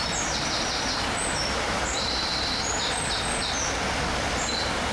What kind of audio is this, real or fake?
real